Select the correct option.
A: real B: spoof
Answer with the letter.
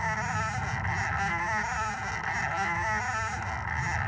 A